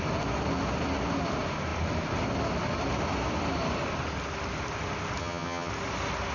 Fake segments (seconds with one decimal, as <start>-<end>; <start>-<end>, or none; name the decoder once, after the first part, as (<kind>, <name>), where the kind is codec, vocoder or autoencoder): 5.2-5.7 (vocoder, HiFi-GAN)